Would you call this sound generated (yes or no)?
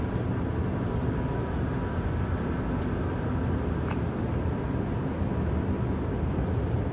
no